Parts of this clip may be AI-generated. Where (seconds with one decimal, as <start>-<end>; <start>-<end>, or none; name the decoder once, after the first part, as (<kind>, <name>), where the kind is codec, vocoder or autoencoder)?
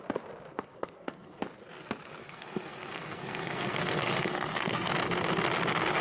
0.5-1.4 (codec, SNAC); 2.2-4.9